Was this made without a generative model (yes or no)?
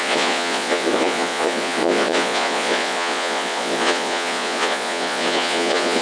no